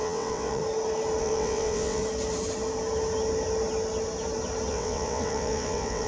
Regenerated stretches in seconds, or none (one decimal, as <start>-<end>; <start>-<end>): 0.0-0.6; 1.2-2.0; 4.7-6.1